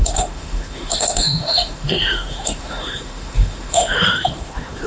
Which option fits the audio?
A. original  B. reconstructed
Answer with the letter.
B